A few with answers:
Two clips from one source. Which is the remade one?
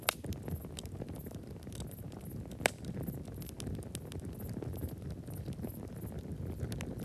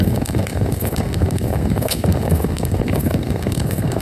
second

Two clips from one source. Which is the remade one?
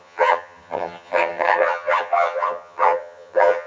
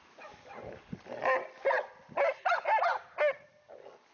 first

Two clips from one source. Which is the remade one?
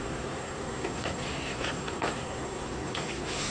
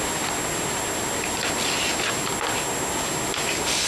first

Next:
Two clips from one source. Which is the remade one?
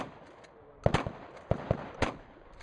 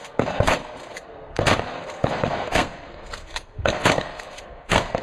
second